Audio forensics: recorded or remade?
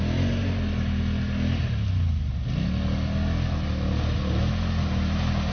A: recorded